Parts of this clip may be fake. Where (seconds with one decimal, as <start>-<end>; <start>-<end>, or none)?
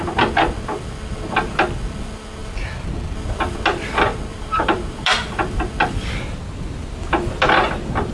4.3-5.7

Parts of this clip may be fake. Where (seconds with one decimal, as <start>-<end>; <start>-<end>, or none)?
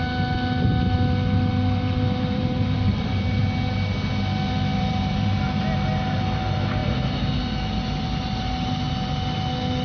1.5-3.3; 4.7-5.4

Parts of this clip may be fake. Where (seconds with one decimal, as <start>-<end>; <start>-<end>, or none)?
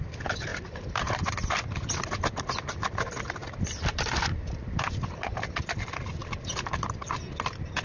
0.5-1.1; 6.2-7.1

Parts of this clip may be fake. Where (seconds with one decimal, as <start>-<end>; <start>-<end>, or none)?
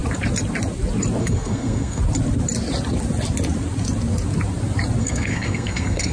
1.2-2.0; 5.0-6.1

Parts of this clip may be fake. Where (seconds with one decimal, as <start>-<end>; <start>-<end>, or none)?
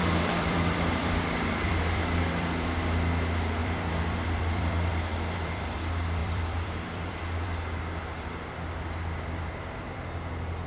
0.0-2.8; 3.6-5.8; 6.2-7.8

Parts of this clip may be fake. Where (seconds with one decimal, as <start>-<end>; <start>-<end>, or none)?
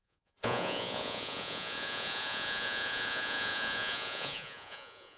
0.0-5.2